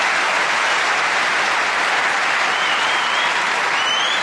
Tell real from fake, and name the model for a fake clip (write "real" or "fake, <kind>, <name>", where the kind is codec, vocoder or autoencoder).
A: real